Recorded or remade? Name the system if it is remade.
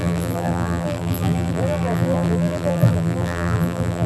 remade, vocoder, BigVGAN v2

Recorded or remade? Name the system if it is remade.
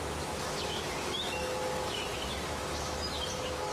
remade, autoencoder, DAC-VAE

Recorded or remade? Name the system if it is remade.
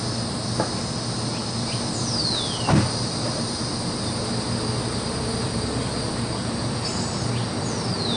recorded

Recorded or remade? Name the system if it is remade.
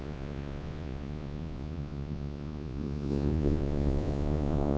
remade, vocoder, Vocos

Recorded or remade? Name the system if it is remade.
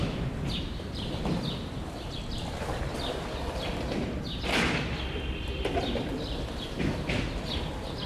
remade, vocoder, BigVGAN v2